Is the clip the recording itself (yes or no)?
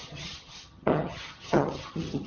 no